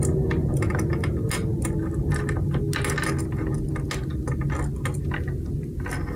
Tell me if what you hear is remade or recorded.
recorded